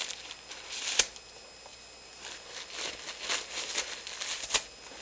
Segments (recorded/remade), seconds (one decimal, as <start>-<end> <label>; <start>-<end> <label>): 0.0-5.0 recorded